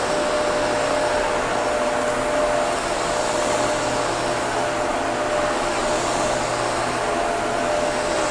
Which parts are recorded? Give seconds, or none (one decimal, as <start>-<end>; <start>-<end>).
0.0-8.3